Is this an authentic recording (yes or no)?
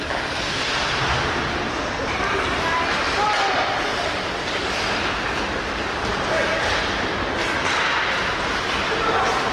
yes